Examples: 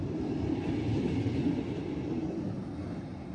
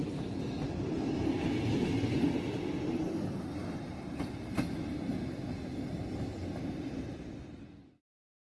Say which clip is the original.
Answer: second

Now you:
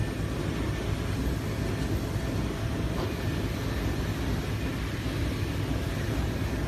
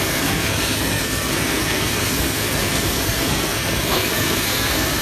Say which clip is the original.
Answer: first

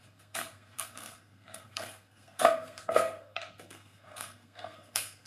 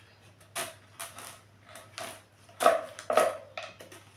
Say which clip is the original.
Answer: second